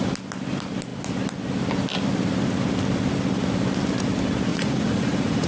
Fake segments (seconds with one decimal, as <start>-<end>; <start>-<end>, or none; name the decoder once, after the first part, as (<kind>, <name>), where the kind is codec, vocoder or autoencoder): 4.5-5.5 (vocoder, Vocos)